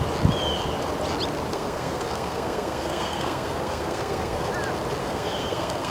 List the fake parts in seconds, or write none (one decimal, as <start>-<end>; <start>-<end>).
1.5-4.5; 5.0-5.9